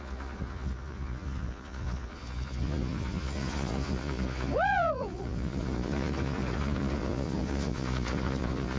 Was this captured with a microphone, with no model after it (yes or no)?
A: no